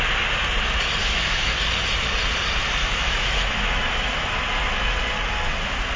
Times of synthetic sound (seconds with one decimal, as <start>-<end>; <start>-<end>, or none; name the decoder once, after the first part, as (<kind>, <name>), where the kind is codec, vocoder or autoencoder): 1.0-1.6 (autoencoder, DAC-VAE); 2.8-4.3

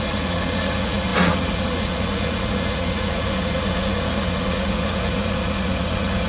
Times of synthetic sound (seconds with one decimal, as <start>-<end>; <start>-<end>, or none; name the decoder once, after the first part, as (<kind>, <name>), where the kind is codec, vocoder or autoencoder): 0.0-6.3 (vocoder, Vocos)

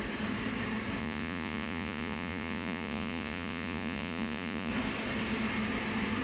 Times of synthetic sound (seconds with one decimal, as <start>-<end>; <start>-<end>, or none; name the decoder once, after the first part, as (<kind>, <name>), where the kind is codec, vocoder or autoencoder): 1.0-4.7 (vocoder, Vocos)

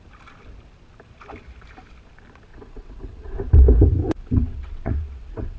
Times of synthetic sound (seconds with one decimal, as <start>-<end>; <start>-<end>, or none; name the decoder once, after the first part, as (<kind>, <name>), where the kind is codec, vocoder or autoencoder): 2.5-3.4 (vocoder, WaveNeXt); 4.0-5.6

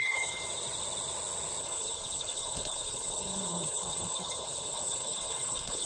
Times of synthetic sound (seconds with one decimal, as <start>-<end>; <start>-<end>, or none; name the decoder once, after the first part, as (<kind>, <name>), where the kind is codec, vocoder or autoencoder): 0.0-0.4 (codec, HILCodec); 1.6-5.9

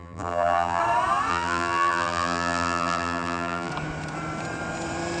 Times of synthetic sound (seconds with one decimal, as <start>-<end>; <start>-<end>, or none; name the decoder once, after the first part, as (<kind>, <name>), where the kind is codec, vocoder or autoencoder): 0.0-0.8 (vocoder, BigVGAN v2); 1.3-3.7

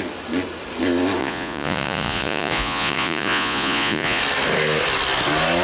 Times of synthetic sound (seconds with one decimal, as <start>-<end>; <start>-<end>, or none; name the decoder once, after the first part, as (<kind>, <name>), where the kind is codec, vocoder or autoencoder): 1.2-4.2 (vocoder, Vocos)

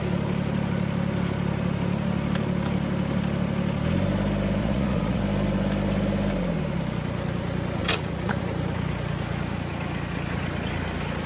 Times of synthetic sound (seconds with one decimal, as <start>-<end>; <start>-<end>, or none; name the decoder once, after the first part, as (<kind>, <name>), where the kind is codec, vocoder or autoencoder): 4.6-5.2 (vocoder, Vocos); 7.8-8.4